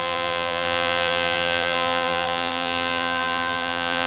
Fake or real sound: fake